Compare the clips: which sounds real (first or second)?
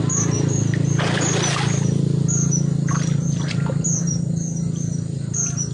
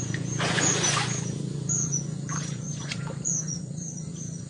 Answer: first